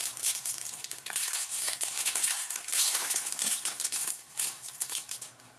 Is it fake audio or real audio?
fake